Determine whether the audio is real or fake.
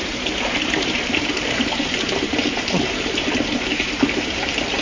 fake